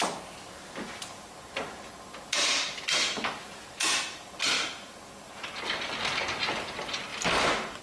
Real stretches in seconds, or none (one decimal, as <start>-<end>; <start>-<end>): 0.0-7.8